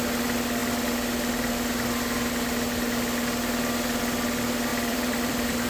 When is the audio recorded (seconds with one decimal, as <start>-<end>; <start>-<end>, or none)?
0.0-4.7